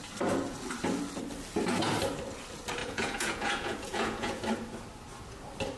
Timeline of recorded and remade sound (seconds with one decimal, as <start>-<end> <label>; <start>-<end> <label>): 0.0-2.8 recorded; 2.8-4.4 remade; 4.4-5.8 recorded